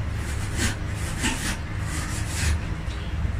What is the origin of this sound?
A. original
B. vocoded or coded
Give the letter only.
A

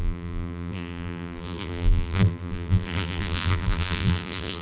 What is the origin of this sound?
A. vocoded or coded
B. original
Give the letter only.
A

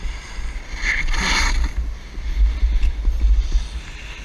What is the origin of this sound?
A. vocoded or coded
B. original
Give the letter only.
B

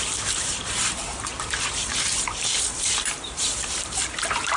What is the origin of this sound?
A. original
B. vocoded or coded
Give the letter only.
B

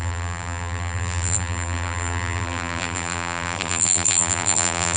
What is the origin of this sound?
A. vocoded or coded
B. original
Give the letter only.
A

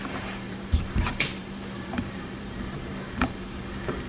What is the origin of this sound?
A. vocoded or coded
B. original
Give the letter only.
A